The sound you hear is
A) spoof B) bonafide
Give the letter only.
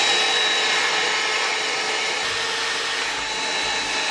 B